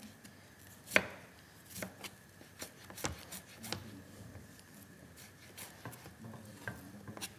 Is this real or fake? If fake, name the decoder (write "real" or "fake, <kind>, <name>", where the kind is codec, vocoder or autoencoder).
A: real